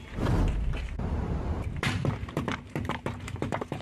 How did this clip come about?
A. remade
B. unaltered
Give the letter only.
A